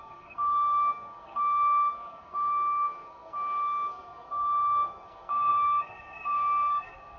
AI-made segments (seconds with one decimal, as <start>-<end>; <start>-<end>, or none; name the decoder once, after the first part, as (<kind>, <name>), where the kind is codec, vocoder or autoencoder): 0.0-7.2 (codec, SNAC)